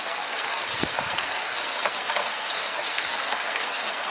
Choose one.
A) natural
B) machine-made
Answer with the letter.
B